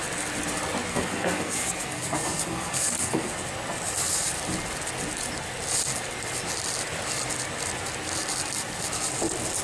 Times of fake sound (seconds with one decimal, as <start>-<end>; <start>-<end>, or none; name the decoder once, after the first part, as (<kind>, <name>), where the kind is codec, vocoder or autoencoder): 0.9-3.3 (codec, SNAC)